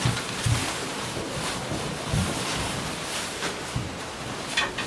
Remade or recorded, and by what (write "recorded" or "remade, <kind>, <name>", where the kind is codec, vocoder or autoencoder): recorded